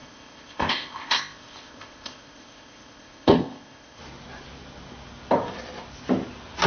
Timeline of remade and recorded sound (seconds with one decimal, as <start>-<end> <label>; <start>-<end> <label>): 0.0-4.0 remade; 4.0-6.7 recorded